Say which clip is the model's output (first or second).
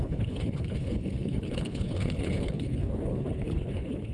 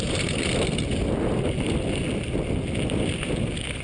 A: first